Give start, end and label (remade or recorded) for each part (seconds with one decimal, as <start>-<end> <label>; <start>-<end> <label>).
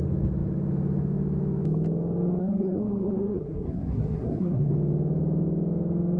0.0-2.4 recorded; 2.4-4.7 remade; 4.7-6.2 recorded